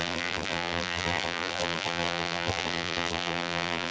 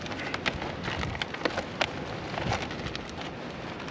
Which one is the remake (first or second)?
first